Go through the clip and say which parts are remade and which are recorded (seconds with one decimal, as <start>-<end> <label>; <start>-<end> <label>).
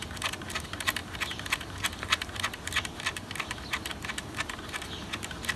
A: 0.0-5.6 recorded